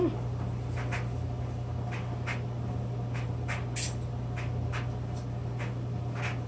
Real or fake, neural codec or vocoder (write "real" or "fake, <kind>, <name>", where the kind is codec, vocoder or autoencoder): real